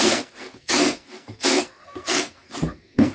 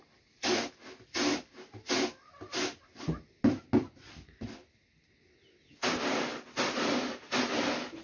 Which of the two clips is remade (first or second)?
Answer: first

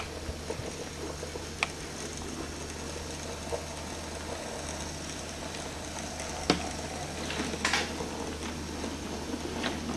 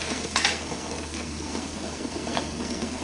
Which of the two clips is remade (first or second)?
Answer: second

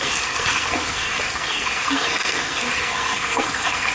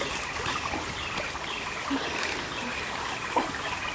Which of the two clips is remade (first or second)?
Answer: first